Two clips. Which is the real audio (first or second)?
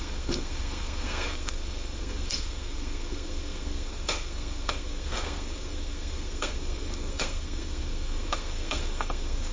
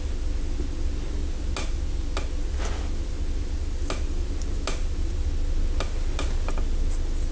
second